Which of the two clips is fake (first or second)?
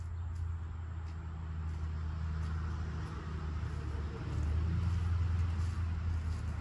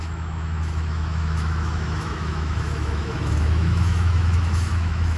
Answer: second